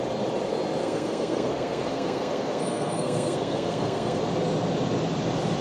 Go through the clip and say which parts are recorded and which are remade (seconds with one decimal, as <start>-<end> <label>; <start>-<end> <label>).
0.0-0.8 recorded; 0.8-4.2 remade; 4.2-5.6 recorded